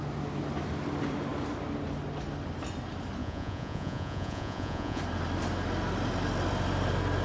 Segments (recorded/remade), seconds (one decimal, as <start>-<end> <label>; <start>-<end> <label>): 0.0-3.2 recorded; 3.2-5.0 remade; 5.0-7.2 recorded